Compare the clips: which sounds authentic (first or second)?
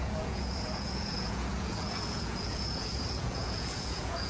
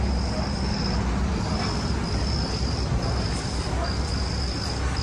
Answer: second